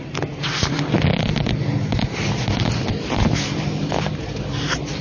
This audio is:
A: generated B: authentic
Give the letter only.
B